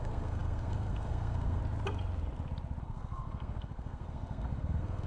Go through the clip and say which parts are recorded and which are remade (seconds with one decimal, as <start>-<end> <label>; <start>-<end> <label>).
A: 0.0-1.6 remade; 1.6-2.8 recorded; 2.8-5.1 remade